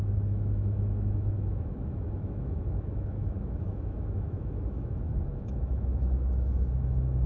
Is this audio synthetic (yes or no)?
yes